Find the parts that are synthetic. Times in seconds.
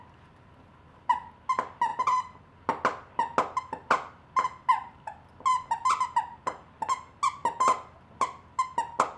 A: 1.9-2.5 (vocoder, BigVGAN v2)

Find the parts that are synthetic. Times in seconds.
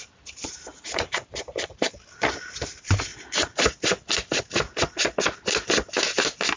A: 0.7-2.2 (vocoder, BigVGAN v2)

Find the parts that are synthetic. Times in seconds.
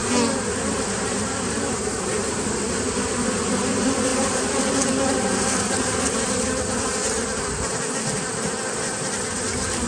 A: 0.0-3.1 (vocoder, BigVGAN v2)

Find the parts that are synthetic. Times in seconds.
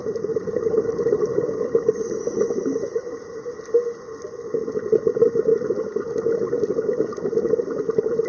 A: 0.0-3.5 (vocoder, BigVGAN v2)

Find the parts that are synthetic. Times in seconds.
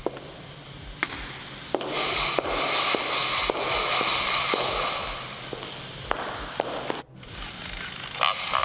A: none